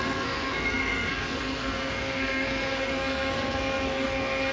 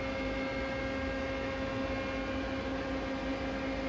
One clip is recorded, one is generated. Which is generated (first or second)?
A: first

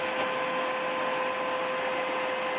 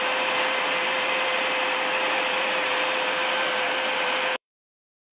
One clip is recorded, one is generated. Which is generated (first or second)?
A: second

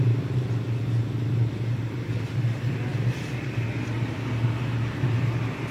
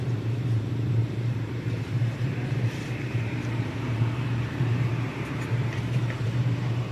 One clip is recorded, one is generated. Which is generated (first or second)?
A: second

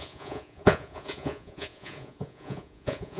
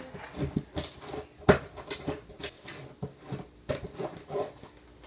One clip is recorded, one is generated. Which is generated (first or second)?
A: first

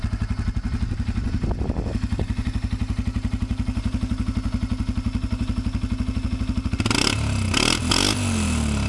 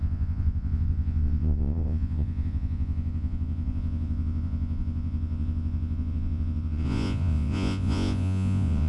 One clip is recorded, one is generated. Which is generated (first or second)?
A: second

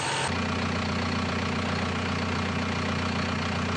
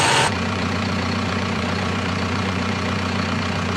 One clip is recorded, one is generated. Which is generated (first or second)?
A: second